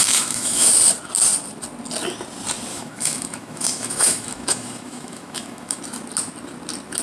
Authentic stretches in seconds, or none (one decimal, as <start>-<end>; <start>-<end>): 0.7-2.7; 5.8-7.0